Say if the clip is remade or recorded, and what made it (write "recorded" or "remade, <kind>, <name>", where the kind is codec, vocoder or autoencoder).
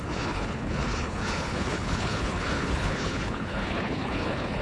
remade, codec, HILCodec